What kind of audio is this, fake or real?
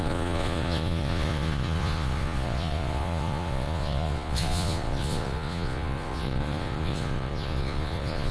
fake